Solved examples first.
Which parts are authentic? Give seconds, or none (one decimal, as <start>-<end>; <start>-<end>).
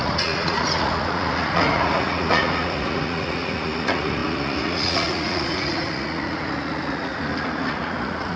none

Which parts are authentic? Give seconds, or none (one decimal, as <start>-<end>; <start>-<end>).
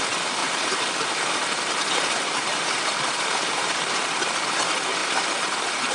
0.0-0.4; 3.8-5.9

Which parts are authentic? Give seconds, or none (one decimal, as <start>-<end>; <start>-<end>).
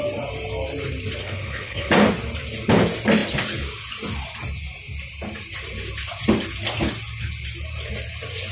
0.0-1.2; 1.9-8.5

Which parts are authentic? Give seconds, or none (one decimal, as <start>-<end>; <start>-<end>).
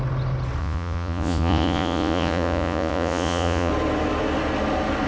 0.0-0.6; 3.7-5.1